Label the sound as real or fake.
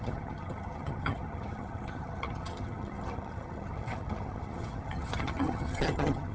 fake